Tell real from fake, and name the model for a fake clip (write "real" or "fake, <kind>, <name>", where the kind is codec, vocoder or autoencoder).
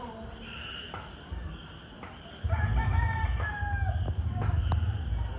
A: real